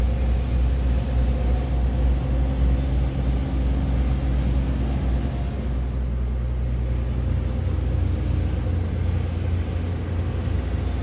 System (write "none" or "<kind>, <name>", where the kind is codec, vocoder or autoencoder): none